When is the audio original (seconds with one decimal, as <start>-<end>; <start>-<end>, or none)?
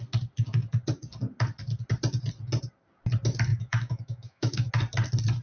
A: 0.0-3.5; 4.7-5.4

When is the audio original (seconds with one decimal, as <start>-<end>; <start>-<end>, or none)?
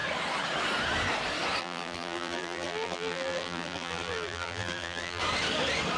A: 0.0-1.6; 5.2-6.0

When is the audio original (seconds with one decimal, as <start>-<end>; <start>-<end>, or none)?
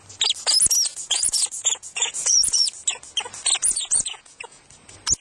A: 0.0-0.9; 2.7-3.6; 4.6-5.2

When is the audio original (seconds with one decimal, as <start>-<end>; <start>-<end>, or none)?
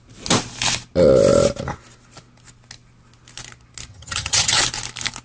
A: 0.0-3.9; 4.6-5.2